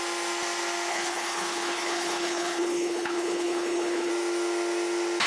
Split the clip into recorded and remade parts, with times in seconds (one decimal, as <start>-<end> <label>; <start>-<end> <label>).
0.0-0.9 recorded; 0.9-4.1 remade; 4.1-5.3 recorded